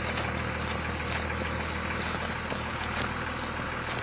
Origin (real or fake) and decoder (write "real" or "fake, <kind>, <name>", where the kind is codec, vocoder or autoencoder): real